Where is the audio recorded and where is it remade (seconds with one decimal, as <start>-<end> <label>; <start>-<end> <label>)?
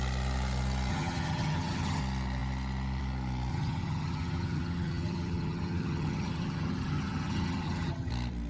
0.0-0.9 recorded; 0.9-2.0 remade; 2.0-3.5 recorded; 3.5-8.1 remade; 8.1-8.5 recorded